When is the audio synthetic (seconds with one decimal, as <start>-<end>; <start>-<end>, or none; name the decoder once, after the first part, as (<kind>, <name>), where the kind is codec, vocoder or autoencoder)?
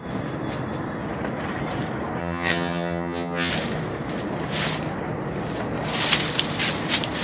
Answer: 2.2-3.5 (vocoder, HiFi-GAN)